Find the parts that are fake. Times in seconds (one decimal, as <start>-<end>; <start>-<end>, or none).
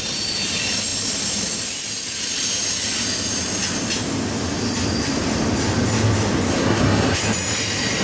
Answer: 6.5-7.2